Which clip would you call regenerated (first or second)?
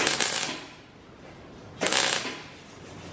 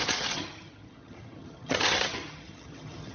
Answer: second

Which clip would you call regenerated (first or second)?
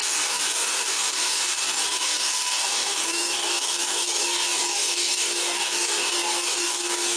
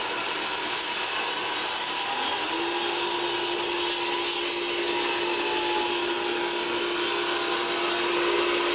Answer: first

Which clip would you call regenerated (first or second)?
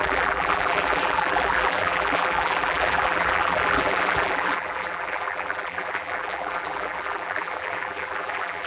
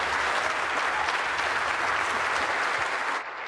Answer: first